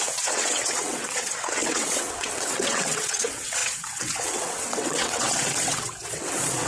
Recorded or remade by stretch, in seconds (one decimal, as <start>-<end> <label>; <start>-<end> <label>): 0.0-6.7 remade